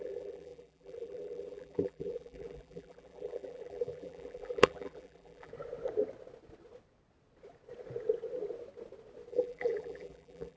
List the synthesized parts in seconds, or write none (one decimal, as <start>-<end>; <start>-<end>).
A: 0.0-5.5; 9.3-10.6